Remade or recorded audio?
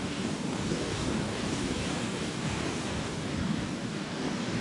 remade